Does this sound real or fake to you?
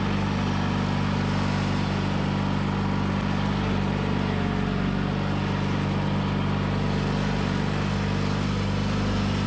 real